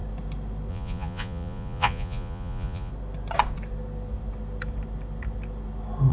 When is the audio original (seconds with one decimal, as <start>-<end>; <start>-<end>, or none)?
0.0-0.7; 2.9-6.1